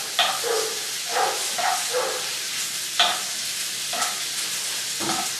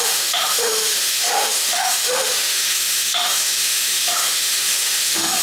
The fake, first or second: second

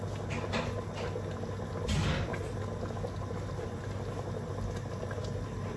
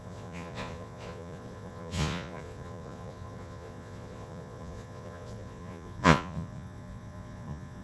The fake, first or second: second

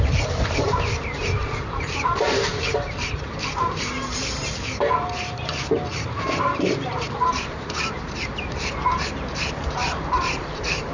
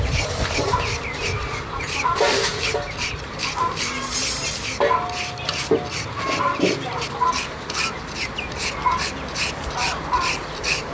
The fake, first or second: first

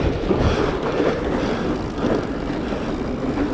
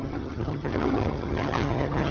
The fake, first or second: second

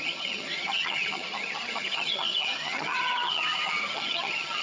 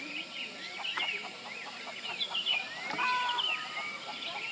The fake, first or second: first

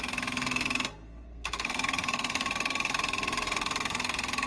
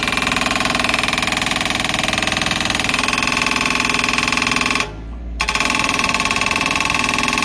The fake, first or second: first